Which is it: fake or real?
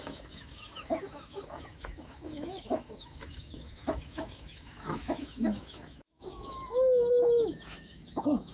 fake